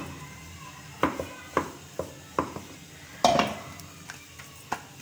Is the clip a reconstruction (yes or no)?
no